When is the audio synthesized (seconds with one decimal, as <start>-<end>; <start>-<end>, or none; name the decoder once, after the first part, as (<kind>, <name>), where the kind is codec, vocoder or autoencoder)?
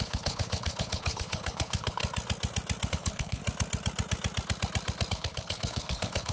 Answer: 0.0-2.0 (codec, HILCodec); 2.9-3.4; 5.1-6.3